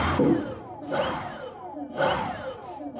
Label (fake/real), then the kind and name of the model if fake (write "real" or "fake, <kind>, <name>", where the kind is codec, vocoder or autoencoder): fake, vocoder, BigVGAN v2